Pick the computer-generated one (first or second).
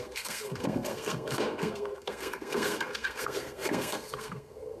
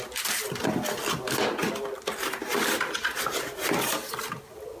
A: first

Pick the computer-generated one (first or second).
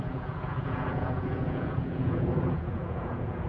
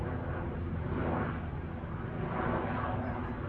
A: first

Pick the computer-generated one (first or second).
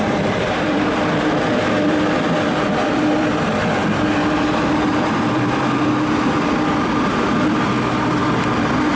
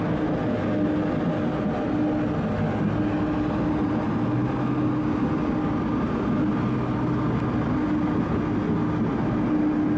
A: first